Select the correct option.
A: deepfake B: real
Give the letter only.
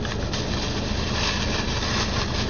B